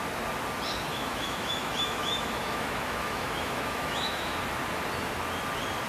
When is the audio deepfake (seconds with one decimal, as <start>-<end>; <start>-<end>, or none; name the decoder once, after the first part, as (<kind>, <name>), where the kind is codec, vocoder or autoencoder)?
0.9-4.4 (autoencoder, DAC-VAE)